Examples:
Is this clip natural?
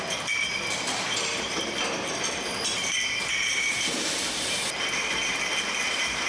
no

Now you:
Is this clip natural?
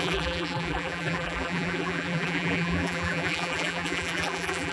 no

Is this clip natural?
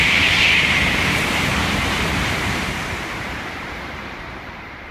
no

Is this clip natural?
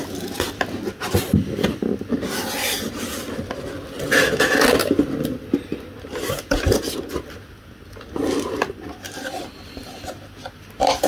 yes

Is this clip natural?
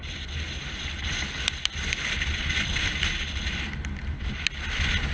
yes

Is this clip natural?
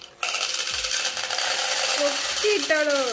yes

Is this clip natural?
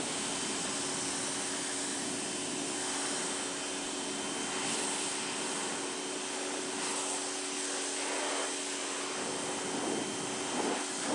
yes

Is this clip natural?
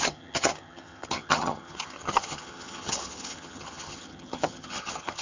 no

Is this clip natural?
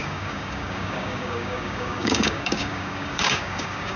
no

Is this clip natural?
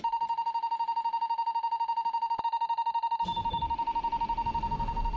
yes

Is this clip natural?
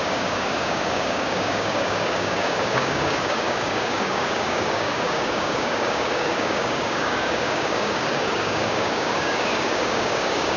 no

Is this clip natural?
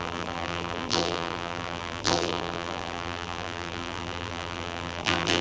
no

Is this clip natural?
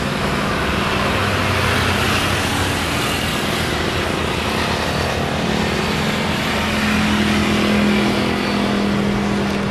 yes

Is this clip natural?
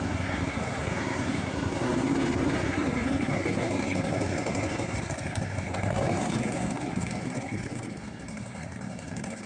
no